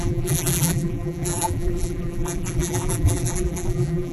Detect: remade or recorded remade